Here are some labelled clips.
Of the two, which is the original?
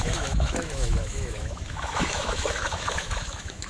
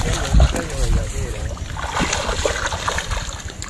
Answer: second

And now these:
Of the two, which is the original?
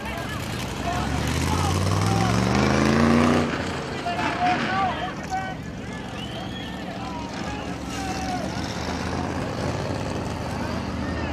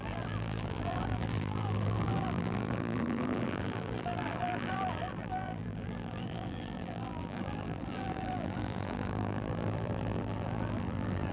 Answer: first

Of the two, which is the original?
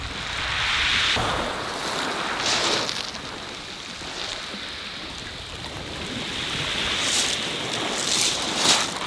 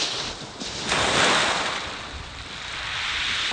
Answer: first